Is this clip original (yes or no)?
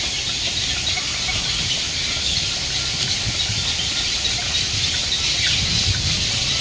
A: yes